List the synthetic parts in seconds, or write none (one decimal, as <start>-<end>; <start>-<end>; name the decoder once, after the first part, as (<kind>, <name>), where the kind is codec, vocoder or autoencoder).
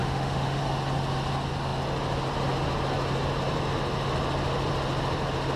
0.0-0.6 (autoencoder, DAC-VAE)